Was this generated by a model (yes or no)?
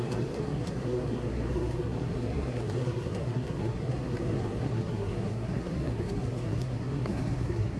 yes